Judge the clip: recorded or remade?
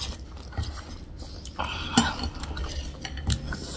recorded